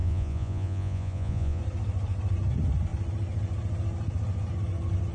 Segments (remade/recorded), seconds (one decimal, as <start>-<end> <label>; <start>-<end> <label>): 0.0-1.6 remade; 1.6-5.1 recorded